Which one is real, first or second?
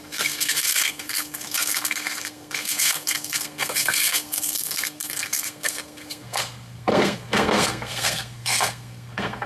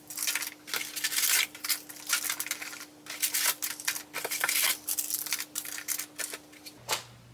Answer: second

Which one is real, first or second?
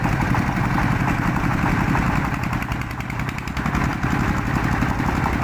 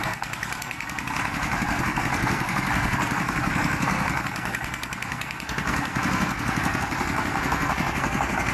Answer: first